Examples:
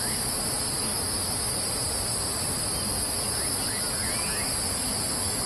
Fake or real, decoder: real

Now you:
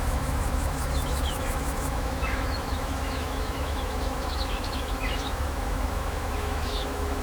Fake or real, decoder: fake, autoencoder, DAC-VAE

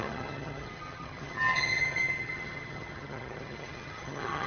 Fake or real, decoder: fake, vocoder, HiFi-GAN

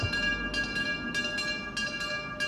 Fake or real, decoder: real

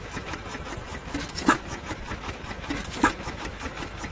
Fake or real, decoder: fake, autoencoder, DAC-VAE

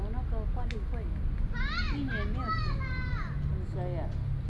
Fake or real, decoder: real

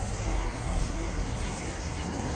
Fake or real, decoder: fake, codec, SNAC